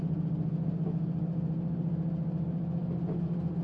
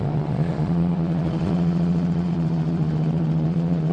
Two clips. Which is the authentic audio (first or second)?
first